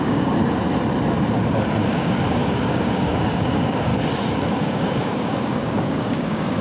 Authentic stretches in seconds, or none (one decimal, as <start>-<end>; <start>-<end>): 0.4-1.8; 3.9-4.5